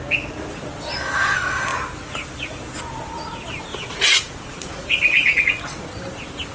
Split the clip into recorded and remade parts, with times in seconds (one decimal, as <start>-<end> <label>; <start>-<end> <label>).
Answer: 0.0-3.7 recorded; 3.7-5.6 remade; 5.6-6.5 recorded